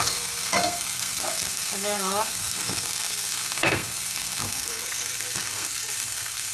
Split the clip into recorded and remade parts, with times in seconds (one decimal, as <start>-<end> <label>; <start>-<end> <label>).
0.0-6.5 remade